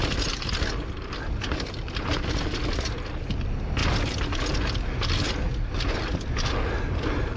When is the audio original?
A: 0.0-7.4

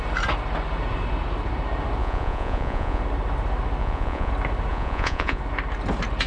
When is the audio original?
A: 0.0-2.0; 3.0-3.8; 4.3-4.7; 5.4-6.3

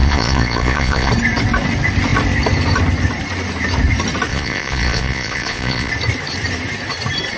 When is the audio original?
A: 1.1-4.3; 5.9-7.4

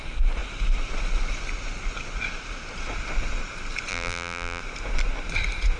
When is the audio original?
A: 0.0-3.9; 4.6-5.8

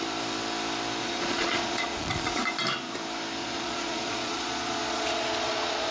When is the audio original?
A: 0.0-1.0; 2.4-3.4

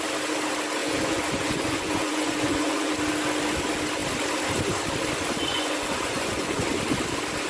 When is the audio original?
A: 0.0-0.8; 2.9-5.5; 6.7-7.5

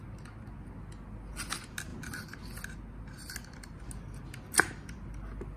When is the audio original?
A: 0.0-5.6

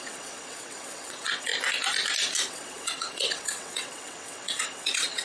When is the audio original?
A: 1.5-2.5